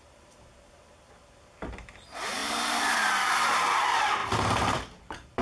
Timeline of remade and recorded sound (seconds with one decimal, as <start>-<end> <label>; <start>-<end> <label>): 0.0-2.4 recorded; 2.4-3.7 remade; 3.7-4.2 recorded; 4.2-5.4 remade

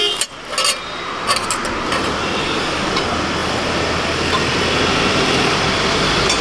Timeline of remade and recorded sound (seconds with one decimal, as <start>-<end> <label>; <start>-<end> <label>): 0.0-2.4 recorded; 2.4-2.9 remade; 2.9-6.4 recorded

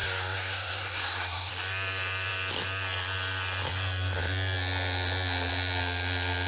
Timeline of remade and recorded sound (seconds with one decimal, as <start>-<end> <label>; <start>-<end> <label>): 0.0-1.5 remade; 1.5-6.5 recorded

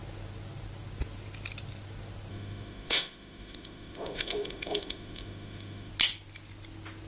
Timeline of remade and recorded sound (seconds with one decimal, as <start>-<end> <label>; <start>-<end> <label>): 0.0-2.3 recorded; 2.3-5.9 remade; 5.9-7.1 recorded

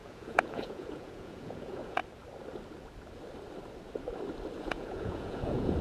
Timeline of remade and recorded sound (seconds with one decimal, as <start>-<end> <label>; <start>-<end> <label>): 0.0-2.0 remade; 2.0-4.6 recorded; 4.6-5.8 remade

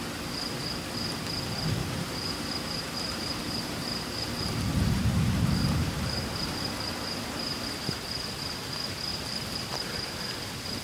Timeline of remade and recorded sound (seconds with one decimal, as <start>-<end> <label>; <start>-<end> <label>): 0.0-1.8 recorded; 1.8-6.8 remade; 6.8-9.1 recorded; 9.1-10.4 remade; 10.4-10.8 recorded

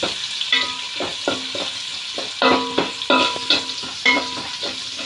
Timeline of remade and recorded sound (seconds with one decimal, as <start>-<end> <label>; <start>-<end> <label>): 0.0-5.1 recorded